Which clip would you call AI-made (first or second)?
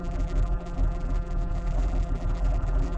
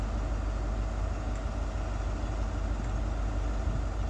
first